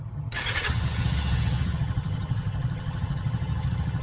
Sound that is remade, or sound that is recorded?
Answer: remade